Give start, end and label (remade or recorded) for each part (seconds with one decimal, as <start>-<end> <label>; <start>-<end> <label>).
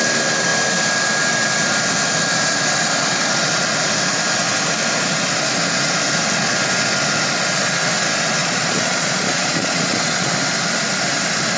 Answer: 0.0-8.4 recorded; 8.4-10.3 remade; 10.3-11.6 recorded